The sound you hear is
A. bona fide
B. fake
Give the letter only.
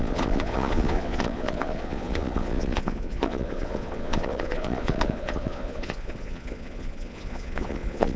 B